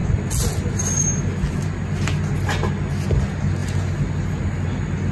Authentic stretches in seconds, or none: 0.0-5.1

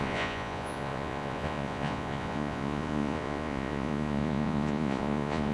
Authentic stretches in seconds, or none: none